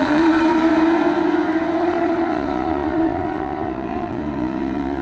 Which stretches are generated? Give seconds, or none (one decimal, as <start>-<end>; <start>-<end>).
0.0-0.7; 1.8-5.0